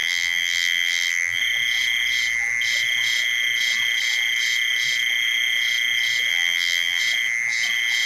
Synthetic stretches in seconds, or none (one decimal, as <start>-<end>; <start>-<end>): 0.0-1.4; 6.3-7.0